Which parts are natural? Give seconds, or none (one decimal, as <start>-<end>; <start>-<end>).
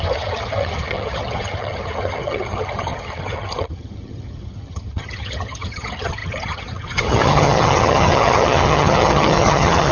none